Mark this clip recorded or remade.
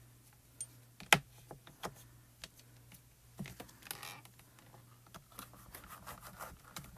recorded